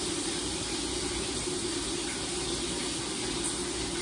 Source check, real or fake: real